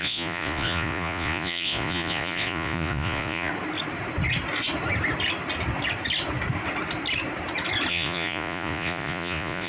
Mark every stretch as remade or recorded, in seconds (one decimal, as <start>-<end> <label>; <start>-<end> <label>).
0.0-3.5 remade; 3.5-7.9 recorded; 7.9-9.7 remade